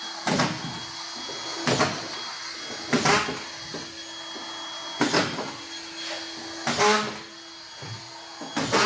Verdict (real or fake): real